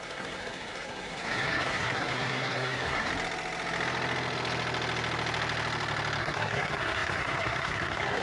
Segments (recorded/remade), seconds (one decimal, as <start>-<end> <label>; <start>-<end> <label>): 0.0-3.1 remade; 3.1-6.2 recorded; 6.2-8.2 remade